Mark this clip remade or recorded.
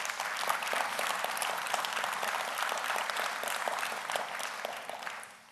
remade